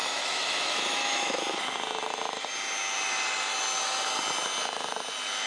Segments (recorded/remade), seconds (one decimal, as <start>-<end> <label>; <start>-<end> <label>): 0.0-1.4 remade; 1.4-5.5 recorded

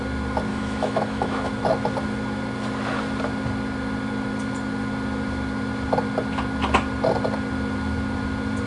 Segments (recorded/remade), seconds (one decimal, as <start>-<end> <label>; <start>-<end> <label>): 0.0-0.5 recorded; 0.5-1.5 remade; 1.5-8.7 recorded

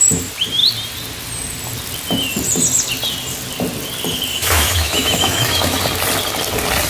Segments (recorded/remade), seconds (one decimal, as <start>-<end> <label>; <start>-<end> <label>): 0.0-4.3 recorded; 4.3-5.8 remade; 5.8-6.9 recorded

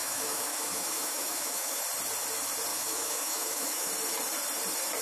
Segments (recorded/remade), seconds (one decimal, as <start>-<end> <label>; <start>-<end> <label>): 0.0-1.8 remade; 1.8-2.7 recorded; 2.7-3.9 remade; 3.9-5.0 recorded

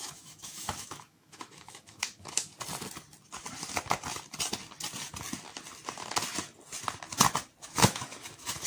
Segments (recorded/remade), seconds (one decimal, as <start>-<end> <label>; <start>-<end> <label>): 0.0-2.5 remade; 2.5-7.6 recorded; 7.6-8.7 remade

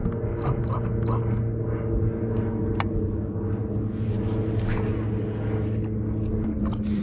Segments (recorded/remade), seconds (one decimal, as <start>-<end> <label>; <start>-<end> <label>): 0.0-7.0 recorded